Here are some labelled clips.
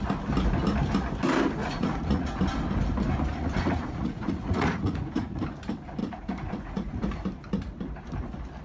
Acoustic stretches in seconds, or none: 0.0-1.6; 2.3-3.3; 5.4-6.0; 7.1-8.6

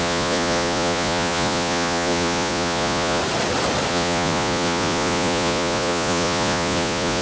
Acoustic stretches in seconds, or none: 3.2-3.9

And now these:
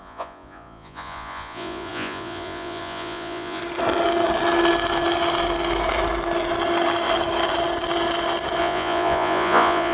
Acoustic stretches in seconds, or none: 3.6-8.6